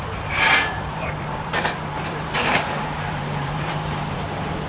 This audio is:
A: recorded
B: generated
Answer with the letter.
B